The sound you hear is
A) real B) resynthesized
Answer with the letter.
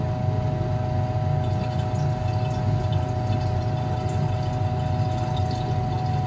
A